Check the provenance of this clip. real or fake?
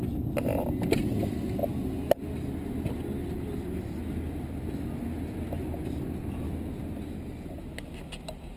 real